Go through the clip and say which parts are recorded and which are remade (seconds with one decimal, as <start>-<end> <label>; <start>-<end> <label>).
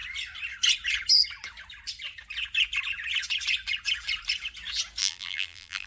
0.0-5.0 recorded; 5.0-5.9 remade